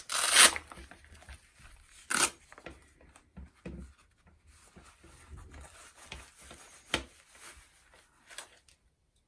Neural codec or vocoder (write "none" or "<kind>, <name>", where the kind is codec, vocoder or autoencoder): none